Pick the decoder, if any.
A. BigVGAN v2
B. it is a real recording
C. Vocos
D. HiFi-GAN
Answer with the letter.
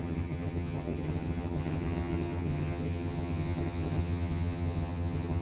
D